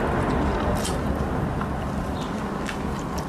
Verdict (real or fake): real